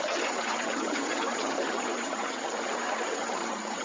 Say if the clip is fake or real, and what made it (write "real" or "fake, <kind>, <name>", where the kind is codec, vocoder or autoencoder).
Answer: fake, vocoder, HiFi-GAN